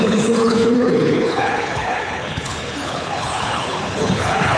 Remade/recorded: remade